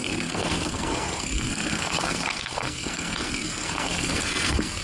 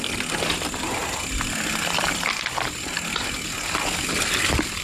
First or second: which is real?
second